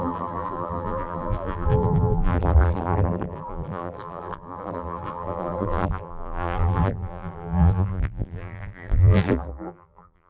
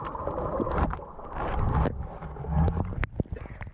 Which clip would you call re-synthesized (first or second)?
first